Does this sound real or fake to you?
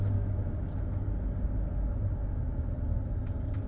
real